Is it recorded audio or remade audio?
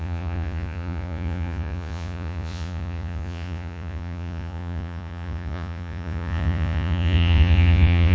remade